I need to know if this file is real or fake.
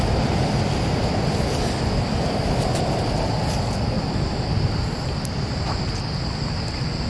real